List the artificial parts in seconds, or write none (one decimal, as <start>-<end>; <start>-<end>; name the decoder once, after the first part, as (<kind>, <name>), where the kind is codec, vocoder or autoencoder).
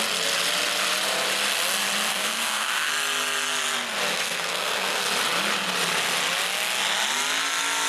2.1-2.9 (codec, SNAC); 4.1-5.0